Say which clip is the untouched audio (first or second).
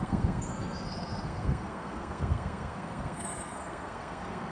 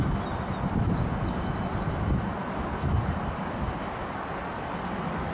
second